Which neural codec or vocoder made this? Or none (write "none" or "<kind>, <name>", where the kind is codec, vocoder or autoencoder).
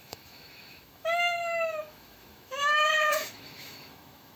autoencoder, DAC-VAE